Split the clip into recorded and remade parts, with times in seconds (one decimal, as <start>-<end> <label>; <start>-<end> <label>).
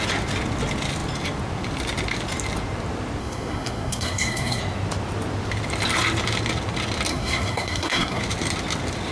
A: 0.0-3.2 recorded; 3.2-4.6 remade; 4.6-7.1 recorded; 7.1-8.2 remade; 8.2-9.1 recorded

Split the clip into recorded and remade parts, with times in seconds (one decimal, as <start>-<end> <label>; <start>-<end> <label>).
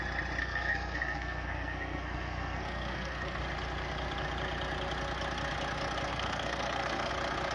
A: 0.0-0.4 recorded; 0.4-3.4 remade; 3.4-6.1 recorded; 6.1-7.1 remade; 7.1-7.5 recorded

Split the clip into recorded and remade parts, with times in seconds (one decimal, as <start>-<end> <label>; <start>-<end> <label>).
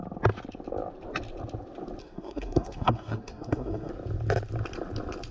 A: 0.0-2.0 recorded; 2.0-3.9 remade; 3.9-5.3 recorded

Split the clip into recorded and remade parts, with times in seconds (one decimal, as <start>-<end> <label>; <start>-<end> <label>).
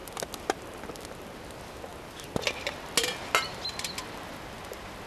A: 0.0-5.1 recorded